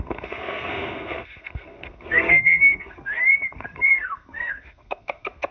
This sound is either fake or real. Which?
fake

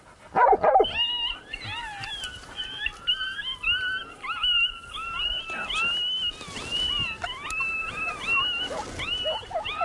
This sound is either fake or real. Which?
real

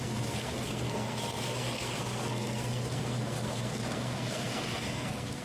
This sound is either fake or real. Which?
fake